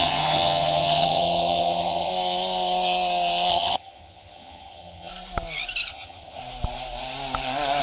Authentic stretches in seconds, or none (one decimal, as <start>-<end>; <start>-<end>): 2.1-3.5; 5.1-5.9; 6.4-7.8